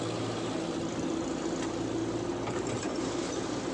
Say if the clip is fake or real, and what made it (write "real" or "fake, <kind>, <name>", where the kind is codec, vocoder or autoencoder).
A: real